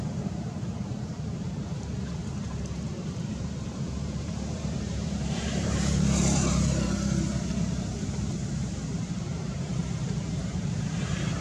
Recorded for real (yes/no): no